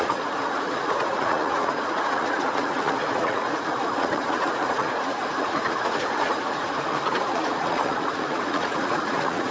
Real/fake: fake